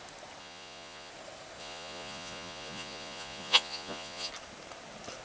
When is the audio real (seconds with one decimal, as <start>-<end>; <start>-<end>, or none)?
0.0-0.4; 1.1-1.6; 4.3-5.2